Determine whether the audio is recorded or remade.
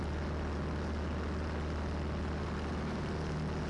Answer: recorded